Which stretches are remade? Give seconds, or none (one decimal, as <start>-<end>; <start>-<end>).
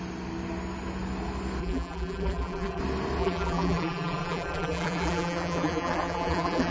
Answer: 1.6-2.8; 3.2-6.7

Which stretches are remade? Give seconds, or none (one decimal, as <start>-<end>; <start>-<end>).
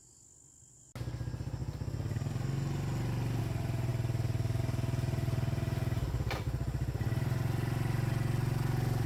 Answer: 3.9-4.6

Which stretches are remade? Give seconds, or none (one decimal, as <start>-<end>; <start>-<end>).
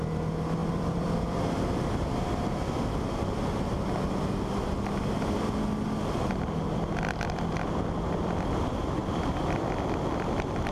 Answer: 0.6-1.2; 9.0-10.7